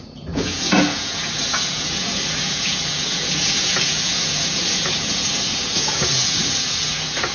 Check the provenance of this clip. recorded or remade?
remade